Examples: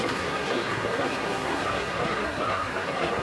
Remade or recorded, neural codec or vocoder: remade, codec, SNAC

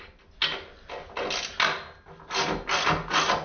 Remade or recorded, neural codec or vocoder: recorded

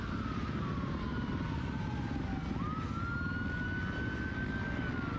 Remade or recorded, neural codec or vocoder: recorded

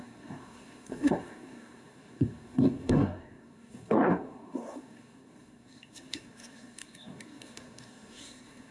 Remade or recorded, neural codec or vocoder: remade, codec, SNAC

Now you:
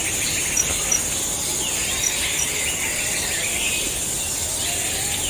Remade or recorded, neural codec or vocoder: recorded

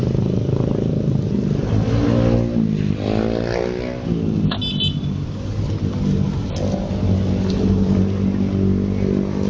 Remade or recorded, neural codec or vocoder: recorded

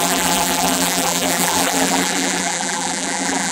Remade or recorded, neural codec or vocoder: remade, vocoder, BigVGAN v2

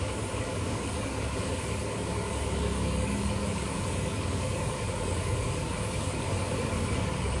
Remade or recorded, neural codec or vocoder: remade, codec, DAC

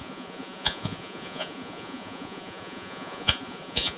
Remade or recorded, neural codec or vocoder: remade, vocoder, Vocos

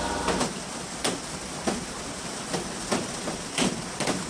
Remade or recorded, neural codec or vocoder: recorded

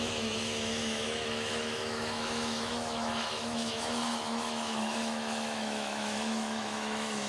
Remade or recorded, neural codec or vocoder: remade, autoencoder, DAC-VAE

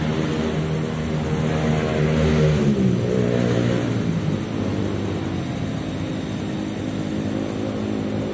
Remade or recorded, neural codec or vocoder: recorded